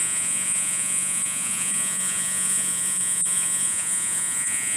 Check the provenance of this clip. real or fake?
fake